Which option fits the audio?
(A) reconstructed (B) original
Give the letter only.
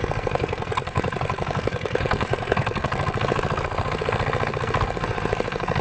A